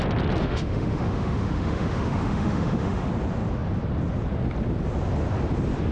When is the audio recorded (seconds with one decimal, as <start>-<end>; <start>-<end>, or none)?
0.0-0.4; 3.1-5.9